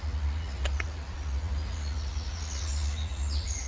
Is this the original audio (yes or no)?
no